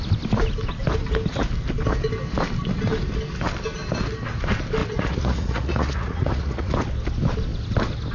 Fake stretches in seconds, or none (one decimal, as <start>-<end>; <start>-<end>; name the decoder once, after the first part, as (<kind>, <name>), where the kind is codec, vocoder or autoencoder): 4.8-6.7 (vocoder, Vocos)